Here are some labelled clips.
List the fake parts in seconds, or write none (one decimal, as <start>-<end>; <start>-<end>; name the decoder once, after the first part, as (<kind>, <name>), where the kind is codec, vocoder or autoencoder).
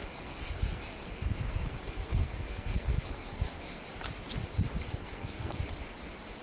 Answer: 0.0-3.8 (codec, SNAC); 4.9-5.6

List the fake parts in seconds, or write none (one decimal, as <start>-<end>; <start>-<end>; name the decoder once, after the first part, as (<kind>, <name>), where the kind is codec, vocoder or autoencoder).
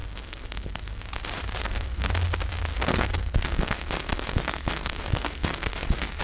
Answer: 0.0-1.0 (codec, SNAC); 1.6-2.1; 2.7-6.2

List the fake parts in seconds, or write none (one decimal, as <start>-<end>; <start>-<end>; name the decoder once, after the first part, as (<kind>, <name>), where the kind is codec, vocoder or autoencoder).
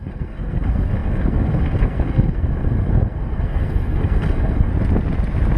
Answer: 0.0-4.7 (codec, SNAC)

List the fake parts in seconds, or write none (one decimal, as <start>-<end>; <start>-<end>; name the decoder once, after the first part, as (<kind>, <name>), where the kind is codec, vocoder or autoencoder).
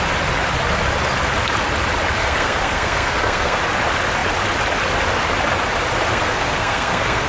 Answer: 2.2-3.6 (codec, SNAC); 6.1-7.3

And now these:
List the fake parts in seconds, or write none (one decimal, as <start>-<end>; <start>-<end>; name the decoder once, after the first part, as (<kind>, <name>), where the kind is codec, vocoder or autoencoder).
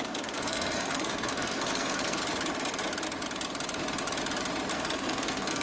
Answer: 0.0-2.2 (codec, SNAC); 4.7-5.6